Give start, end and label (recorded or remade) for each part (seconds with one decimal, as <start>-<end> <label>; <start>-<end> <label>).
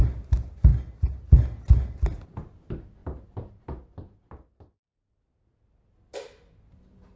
0.0-7.2 recorded